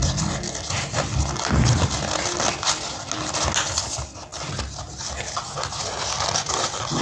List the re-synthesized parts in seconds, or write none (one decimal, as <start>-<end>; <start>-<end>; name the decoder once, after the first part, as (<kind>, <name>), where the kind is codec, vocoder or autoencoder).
none